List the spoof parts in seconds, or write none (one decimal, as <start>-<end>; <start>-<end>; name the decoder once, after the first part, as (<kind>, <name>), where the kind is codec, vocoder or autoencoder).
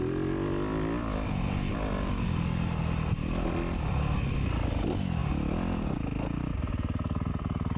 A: none